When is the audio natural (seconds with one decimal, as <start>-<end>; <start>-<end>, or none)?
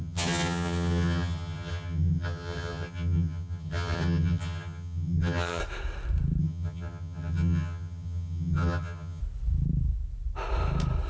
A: 5.6-6.4; 9.2-11.1